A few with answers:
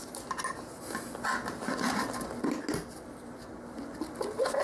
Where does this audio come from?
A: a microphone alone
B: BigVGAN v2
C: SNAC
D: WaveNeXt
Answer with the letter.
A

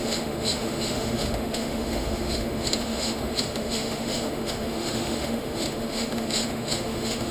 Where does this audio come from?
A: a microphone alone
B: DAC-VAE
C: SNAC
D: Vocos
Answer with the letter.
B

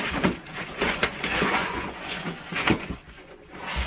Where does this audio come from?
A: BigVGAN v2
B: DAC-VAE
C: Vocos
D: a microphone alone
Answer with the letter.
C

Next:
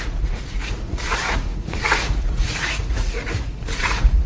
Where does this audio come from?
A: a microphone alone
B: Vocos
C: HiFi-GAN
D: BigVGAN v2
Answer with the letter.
B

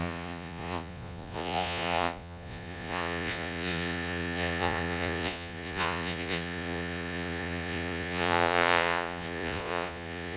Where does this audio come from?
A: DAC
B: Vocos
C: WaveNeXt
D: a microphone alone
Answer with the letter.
B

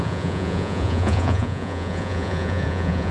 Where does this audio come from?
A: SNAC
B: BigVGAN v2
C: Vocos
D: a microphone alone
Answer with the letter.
C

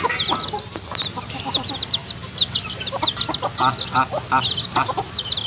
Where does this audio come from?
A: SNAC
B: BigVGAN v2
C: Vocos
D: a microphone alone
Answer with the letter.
D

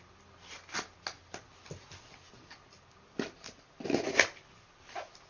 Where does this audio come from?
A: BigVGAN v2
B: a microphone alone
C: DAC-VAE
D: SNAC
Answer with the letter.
B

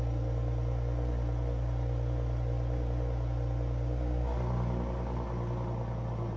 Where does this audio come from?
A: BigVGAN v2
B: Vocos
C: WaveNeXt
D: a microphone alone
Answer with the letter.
D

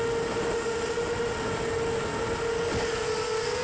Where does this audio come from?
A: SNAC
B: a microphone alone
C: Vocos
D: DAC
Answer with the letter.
B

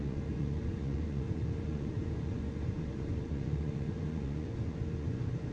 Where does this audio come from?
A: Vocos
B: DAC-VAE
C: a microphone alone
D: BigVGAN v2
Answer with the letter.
A